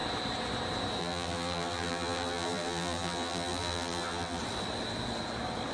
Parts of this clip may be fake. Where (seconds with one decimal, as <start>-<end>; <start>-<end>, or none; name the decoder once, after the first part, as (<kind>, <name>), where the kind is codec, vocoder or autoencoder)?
1.0-4.4 (vocoder, BigVGAN v2)